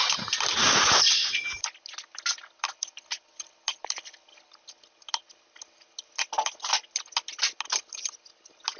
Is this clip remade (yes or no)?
no